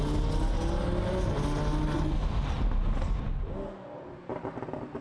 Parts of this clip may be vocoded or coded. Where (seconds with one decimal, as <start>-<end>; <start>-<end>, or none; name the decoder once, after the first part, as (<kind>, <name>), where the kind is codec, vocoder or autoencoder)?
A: none